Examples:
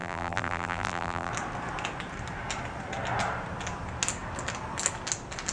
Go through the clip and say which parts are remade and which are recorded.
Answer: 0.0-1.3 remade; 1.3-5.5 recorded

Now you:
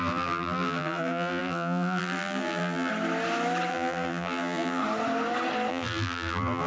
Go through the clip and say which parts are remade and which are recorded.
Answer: 0.0-2.9 remade; 2.9-3.7 recorded; 3.7-4.8 remade; 4.8-5.7 recorded; 5.7-6.7 remade

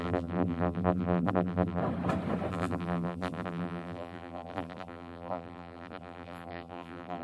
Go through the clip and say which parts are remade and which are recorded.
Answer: 0.0-1.8 remade; 1.8-2.5 recorded; 2.5-7.2 remade

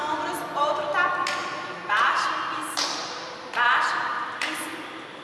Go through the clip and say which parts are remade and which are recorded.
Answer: 0.0-1.4 recorded; 1.4-3.3 remade; 3.3-5.2 recorded